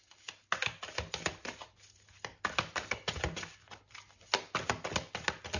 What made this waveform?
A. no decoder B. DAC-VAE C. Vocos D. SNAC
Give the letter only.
A